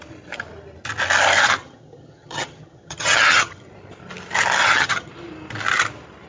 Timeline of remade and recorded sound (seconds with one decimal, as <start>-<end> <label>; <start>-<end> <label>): 0.0-1.6 recorded; 1.6-3.7 remade; 3.7-4.6 recorded; 4.6-5.1 remade; 5.1-6.3 recorded